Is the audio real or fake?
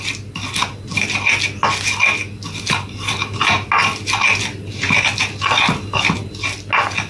real